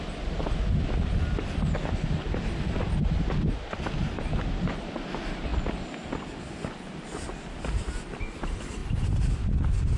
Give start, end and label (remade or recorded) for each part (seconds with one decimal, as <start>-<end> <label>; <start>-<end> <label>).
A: 0.0-10.0 recorded